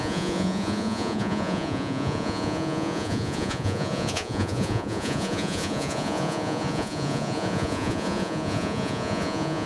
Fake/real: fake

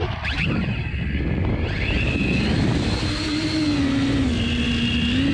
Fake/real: real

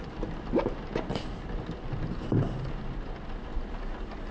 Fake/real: real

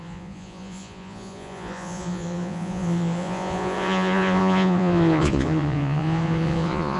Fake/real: fake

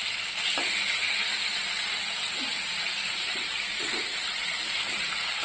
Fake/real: real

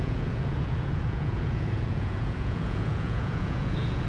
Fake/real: fake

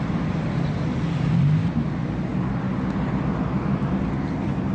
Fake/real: real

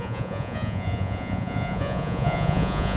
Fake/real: fake